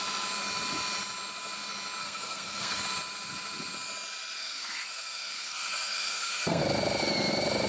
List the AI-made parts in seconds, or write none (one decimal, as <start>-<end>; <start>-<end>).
2.0-2.8; 4.4-6.6